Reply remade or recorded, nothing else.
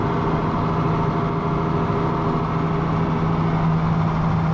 recorded